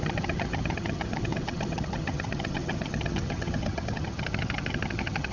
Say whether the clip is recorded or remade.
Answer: remade